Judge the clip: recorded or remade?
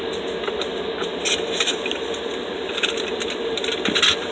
recorded